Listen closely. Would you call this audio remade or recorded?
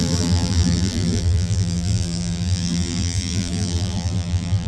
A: remade